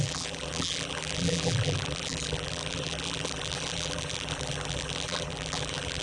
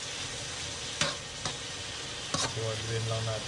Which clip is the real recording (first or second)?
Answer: second